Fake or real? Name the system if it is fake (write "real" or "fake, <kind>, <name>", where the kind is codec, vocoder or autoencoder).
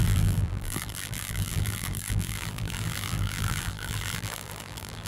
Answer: fake, vocoder, BigVGAN v2